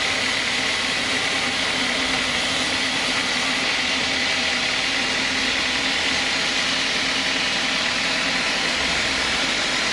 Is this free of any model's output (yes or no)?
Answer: yes